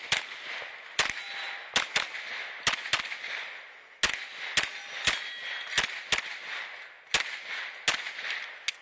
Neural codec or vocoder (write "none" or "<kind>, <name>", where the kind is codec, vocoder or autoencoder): none